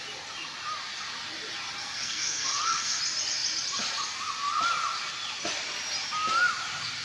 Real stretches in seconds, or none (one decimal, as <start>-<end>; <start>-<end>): 0.0-1.8; 3.0-7.0